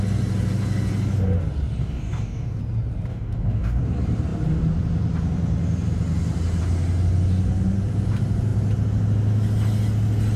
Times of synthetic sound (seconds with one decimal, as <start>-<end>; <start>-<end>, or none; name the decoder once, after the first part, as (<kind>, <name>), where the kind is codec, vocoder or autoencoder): 1.8-2.6 (codec, DAC); 3.1-3.8